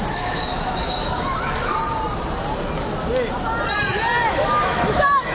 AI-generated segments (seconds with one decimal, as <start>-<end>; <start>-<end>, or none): 0.0-1.7; 4.3-5.3

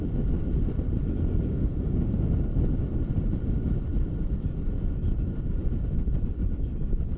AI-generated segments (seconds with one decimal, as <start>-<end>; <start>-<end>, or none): 1.5-2.2